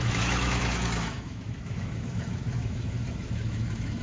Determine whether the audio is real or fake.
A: fake